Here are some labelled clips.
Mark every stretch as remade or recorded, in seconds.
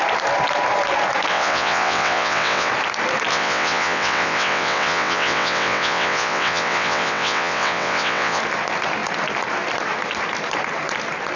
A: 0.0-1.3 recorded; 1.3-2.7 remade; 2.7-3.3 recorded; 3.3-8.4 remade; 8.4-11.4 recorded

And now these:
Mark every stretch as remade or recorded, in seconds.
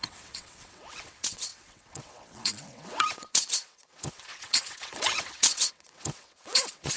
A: 0.0-7.0 remade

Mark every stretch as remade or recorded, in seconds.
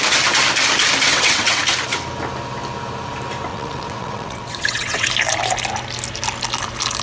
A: 0.0-1.1 recorded; 1.1-1.6 remade; 1.6-3.5 recorded; 3.5-5.1 remade; 5.1-7.0 recorded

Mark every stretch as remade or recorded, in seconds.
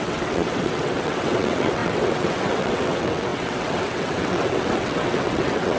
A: 0.0-5.8 remade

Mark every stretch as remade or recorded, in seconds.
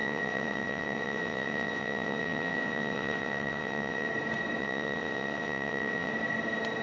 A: 0.0-4.1 remade; 4.1-4.6 recorded; 4.6-6.1 remade; 6.1-6.8 recorded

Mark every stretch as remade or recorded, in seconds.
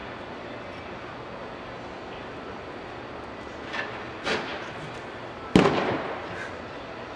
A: 0.0-7.2 recorded